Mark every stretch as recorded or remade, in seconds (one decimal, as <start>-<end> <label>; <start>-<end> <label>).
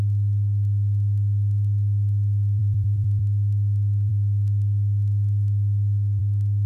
0.0-2.6 recorded; 2.6-3.2 remade; 3.2-6.7 recorded